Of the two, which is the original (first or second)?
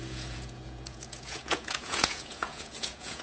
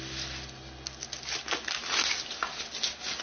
second